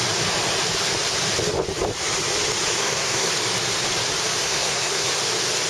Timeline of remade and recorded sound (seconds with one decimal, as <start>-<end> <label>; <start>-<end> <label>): 0.0-2.8 recorded; 2.8-3.3 remade; 3.3-4.4 recorded; 4.4-5.1 remade; 5.1-5.7 recorded